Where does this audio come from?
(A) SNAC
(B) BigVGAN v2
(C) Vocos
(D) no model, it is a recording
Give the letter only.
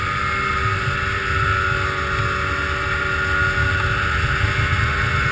D